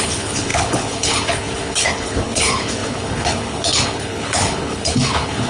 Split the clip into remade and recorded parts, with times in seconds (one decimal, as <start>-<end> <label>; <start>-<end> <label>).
0.0-5.5 remade